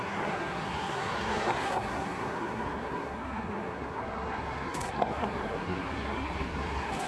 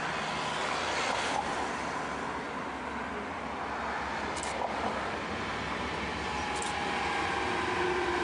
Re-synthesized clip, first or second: first